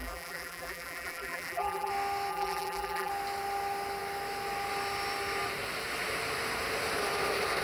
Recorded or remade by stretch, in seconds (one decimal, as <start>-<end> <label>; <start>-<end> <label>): 0.0-1.9 remade; 1.9-2.3 recorded; 2.3-3.1 remade; 3.1-7.6 recorded